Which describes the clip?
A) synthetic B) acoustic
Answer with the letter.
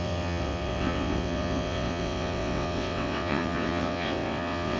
A